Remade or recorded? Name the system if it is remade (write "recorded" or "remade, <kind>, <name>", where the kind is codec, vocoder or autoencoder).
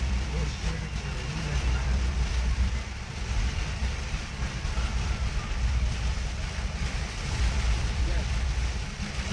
remade, vocoder, BigVGAN v2